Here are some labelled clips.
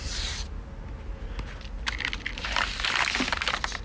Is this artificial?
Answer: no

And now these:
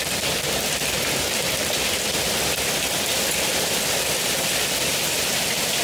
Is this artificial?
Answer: no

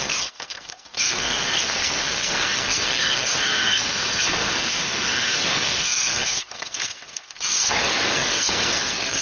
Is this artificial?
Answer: yes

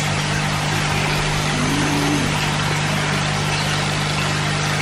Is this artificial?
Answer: no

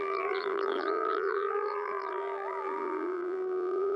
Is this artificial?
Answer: yes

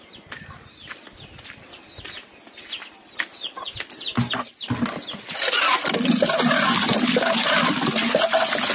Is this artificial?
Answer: no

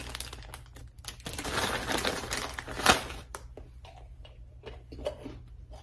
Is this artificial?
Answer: no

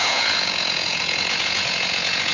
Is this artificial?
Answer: yes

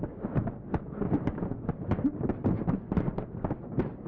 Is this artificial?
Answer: no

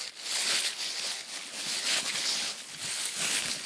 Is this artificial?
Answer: yes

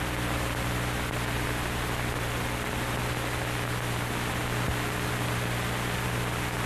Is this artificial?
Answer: no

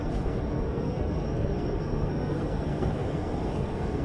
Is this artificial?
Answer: yes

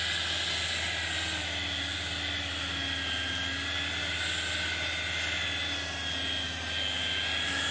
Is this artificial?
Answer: no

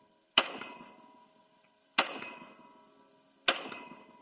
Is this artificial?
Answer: no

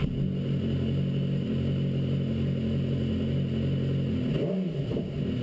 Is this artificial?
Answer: no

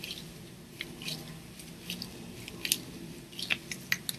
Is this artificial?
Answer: no